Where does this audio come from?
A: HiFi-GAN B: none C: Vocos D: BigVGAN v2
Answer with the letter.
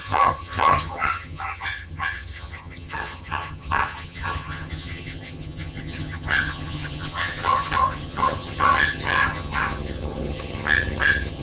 A